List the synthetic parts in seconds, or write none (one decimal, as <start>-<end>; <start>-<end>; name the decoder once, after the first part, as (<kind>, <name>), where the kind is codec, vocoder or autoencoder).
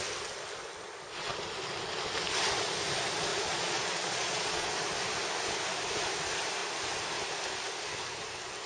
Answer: 3.3-4.7 (vocoder, Vocos)